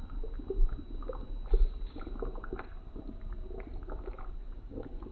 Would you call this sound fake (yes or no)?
no